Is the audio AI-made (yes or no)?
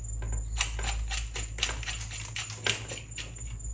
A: no